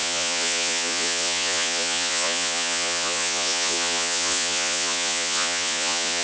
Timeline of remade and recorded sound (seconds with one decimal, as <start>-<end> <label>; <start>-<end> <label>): 0.0-6.2 remade